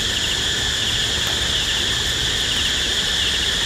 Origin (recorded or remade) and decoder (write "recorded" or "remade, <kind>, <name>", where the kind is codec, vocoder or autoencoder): recorded